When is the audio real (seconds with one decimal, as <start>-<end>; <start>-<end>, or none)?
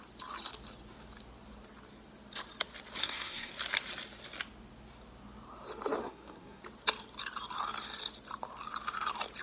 0.0-3.0; 3.5-6.0; 6.6-9.4